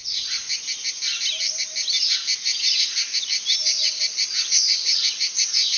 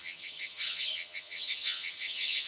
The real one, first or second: first